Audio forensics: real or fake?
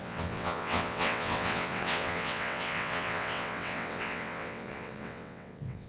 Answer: fake